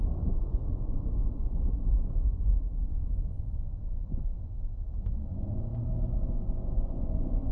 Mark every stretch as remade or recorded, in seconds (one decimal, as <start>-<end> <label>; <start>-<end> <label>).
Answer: 0.0-2.5 remade; 2.5-3.3 recorded; 3.3-4.3 remade; 4.3-5.0 recorded; 5.0-5.7 remade; 5.7-6.2 recorded; 6.2-7.5 remade